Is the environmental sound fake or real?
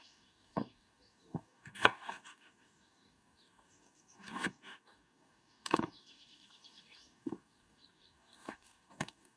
fake